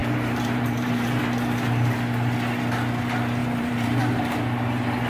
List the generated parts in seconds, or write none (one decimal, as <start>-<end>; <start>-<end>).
0.0-1.2; 3.4-4.0